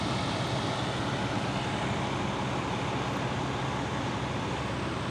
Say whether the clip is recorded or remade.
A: recorded